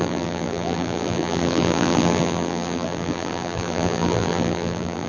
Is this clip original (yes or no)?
no